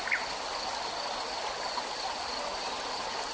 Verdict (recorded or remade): recorded